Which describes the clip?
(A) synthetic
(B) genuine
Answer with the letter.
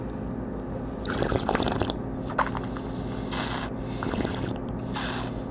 B